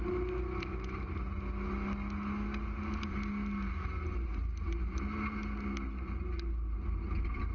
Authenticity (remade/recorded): recorded